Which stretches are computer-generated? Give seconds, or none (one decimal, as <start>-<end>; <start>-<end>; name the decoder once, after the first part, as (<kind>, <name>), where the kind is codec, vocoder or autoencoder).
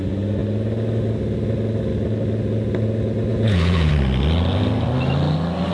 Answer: 3.3-3.9 (vocoder, Vocos)